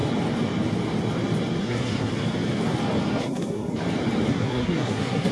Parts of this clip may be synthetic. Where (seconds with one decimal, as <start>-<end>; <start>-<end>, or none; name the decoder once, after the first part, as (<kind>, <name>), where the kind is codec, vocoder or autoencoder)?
1.6-2.1 (codec, SNAC); 3.1-3.7; 4.3-5.3